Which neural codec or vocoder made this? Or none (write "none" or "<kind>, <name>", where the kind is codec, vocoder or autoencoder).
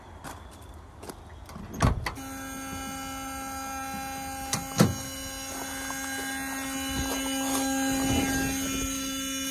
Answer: none